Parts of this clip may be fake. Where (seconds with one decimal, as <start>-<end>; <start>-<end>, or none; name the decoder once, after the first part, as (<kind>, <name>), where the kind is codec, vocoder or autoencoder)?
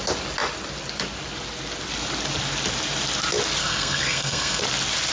3.6-4.6 (codec, SNAC)